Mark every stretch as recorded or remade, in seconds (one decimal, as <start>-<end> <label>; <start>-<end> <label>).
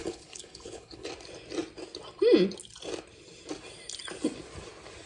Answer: 0.0-1.1 remade; 1.1-5.1 recorded